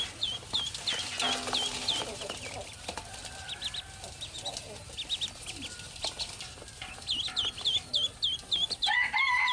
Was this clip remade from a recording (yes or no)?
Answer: no